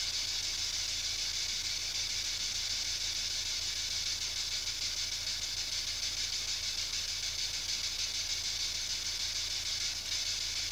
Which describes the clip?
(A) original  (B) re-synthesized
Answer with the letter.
A